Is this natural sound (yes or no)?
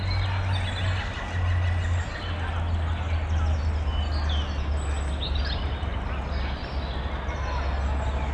yes